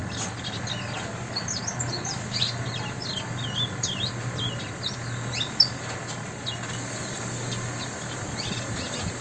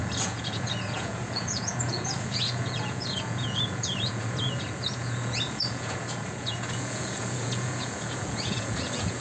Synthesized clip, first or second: second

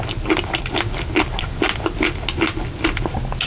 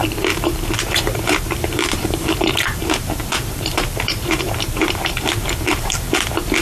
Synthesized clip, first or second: second